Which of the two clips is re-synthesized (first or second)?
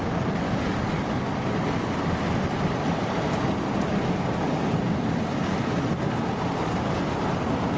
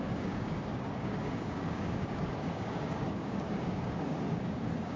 second